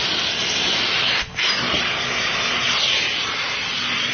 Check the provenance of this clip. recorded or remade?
recorded